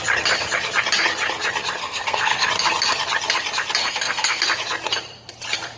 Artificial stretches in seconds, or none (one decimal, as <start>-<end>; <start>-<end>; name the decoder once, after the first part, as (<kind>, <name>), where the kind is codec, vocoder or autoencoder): 1.8-2.5 (codec, SNAC); 3.8-4.4